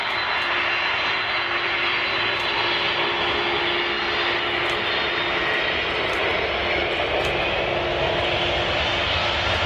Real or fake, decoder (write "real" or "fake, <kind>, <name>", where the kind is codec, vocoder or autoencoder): real